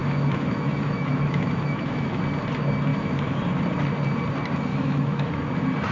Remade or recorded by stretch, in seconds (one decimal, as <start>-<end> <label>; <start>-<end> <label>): 0.0-2.2 remade; 2.2-2.9 recorded; 2.9-3.4 remade; 3.4-4.7 recorded; 4.7-5.3 remade; 5.3-5.9 recorded

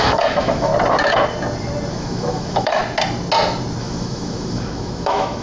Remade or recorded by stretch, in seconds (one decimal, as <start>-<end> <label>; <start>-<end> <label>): 0.0-0.7 remade; 0.7-1.9 recorded; 1.9-2.8 remade; 2.8-3.8 recorded; 3.8-5.4 remade